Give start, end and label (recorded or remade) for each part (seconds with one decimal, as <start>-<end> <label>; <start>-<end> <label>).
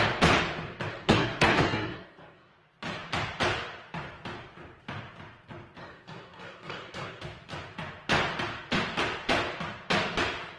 0.0-0.9 recorded; 0.9-2.5 remade; 2.5-5.8 recorded; 5.8-7.2 remade; 7.2-10.6 recorded